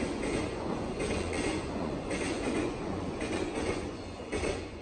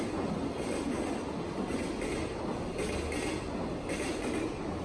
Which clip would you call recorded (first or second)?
second